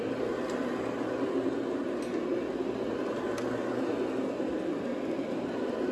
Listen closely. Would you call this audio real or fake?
real